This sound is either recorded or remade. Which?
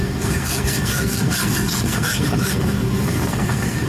remade